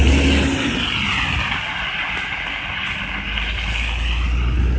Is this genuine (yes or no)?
yes